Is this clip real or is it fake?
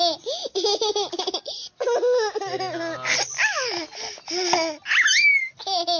real